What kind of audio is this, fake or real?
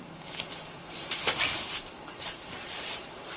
fake